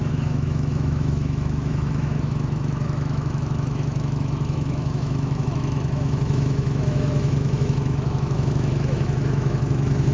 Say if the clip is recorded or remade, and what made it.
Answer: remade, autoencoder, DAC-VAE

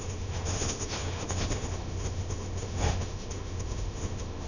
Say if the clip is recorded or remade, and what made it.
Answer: remade, autoencoder, DAC-VAE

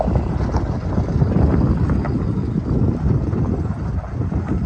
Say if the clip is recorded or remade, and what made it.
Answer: recorded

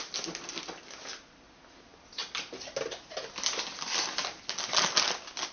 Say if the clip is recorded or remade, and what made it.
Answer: recorded